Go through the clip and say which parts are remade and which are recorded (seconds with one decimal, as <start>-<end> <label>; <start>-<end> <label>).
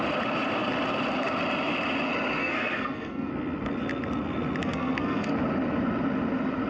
0.0-2.4 recorded; 2.4-3.3 remade; 3.3-4.6 recorded; 4.6-5.3 remade; 5.3-6.7 recorded